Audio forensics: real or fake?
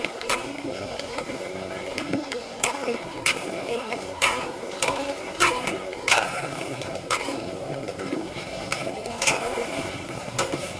fake